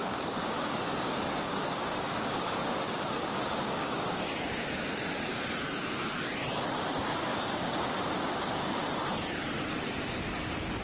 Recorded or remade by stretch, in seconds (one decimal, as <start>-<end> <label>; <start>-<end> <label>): 0.0-4.2 remade; 4.2-7.3 recorded; 7.3-8.1 remade; 8.1-10.8 recorded